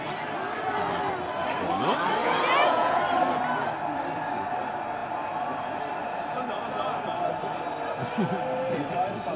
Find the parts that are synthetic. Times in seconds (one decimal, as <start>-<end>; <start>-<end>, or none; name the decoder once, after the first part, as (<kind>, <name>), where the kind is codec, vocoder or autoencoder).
2.2-3.0 (vocoder, Vocos)